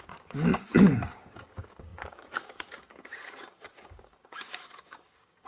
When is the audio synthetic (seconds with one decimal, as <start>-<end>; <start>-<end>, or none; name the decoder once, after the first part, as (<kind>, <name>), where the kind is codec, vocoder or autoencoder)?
0.0-5.5 (codec, DAC)